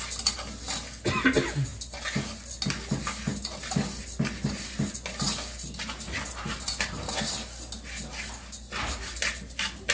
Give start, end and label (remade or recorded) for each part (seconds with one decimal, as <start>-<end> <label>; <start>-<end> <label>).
0.0-9.9 recorded